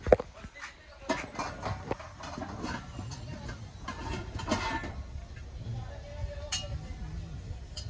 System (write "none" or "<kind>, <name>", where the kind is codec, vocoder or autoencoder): none